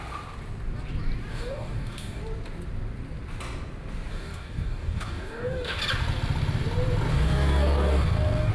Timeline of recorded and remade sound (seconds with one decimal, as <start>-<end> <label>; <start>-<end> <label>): 0.0-1.3 recorded; 1.3-2.2 remade; 2.2-4.1 recorded; 4.1-5.8 remade; 5.8-7.1 recorded; 7.1-8.5 remade